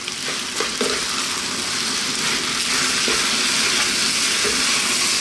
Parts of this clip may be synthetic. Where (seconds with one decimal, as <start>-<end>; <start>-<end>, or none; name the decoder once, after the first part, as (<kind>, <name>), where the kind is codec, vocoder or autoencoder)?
none

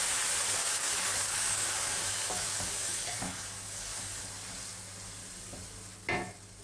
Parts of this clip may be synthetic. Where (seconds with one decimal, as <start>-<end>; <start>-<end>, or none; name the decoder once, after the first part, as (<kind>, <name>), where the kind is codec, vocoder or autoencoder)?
0.6-4.2 (codec, DAC)

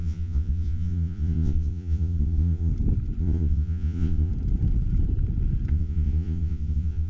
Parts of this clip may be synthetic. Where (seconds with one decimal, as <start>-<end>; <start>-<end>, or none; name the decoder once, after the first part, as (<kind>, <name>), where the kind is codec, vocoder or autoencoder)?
0.0-2.7 (vocoder, Vocos); 3.2-4.3; 5.7-7.1

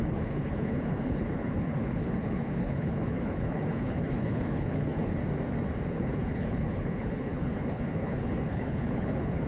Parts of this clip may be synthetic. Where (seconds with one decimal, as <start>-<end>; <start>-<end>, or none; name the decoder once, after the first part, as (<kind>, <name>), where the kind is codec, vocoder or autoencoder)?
0.0-5.1 (codec, HILCodec); 5.9-9.5

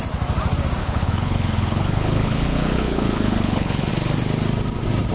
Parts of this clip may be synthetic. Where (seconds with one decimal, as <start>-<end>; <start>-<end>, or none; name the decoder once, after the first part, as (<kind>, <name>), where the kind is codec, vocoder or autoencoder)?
0.8-3.9 (codec, HILCodec)